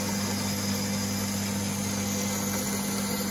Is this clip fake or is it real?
real